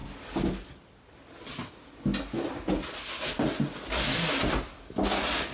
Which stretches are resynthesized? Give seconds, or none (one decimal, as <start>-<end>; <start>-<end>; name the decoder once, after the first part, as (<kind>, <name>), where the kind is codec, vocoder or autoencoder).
none